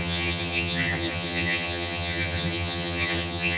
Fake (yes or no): yes